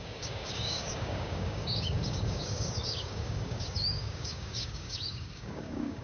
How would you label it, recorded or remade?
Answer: remade